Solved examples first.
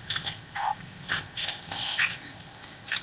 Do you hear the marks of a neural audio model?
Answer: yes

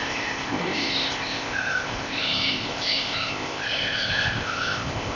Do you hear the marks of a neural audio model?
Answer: yes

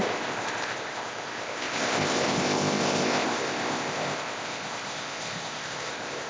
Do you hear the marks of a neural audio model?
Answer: yes